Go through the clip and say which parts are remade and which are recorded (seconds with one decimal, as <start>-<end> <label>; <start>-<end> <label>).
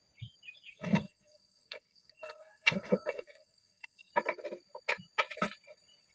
0.0-0.7 recorded; 0.7-4.1 remade; 4.1-6.1 recorded